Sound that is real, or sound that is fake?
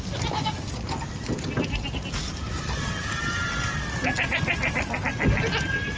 real